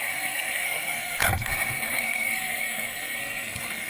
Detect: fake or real fake